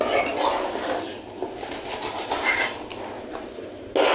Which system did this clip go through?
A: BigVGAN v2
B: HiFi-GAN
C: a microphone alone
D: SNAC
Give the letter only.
C